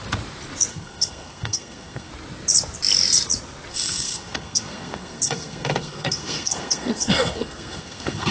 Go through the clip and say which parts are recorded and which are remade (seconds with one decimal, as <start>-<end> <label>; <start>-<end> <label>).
0.0-0.7 recorded; 0.7-2.1 remade; 2.1-3.7 recorded; 3.7-8.3 remade